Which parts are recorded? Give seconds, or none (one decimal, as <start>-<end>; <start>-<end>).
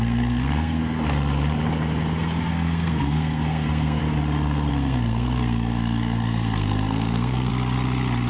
0.8-2.5; 4.0-4.7; 7.5-8.3